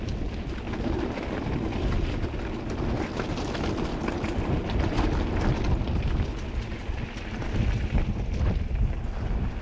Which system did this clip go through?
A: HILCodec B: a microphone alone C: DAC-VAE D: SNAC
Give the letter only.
B